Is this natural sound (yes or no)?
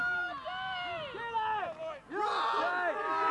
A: yes